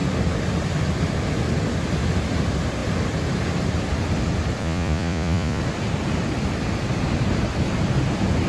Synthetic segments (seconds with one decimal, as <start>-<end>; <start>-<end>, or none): 4.6-5.6